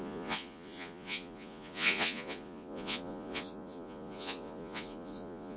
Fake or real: fake